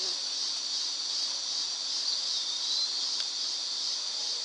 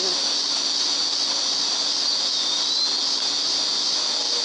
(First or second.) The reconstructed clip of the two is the first